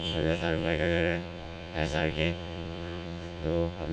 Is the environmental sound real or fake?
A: fake